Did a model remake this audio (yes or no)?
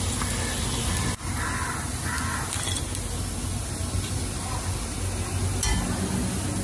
no